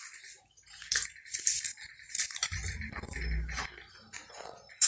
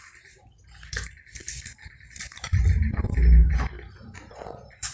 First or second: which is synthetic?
second